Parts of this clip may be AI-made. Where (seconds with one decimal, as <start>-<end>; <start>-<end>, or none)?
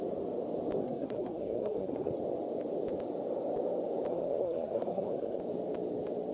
0.8-2.1; 4.1-5.4